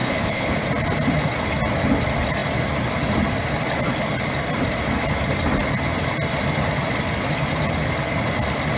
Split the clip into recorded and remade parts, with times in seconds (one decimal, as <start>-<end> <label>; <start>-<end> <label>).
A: 0.0-0.5 remade; 0.5-8.8 recorded